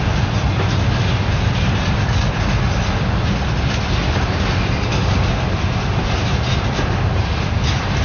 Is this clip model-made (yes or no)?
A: no